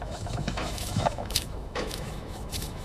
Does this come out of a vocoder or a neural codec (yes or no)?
yes